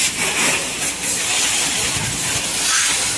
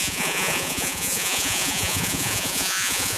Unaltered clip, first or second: first